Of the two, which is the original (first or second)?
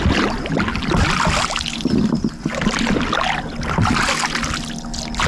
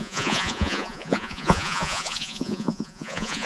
first